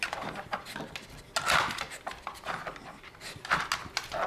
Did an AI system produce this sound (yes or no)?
no